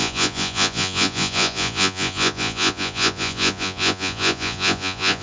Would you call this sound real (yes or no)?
no